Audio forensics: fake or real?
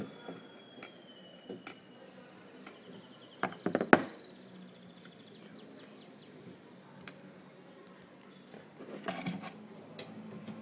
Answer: real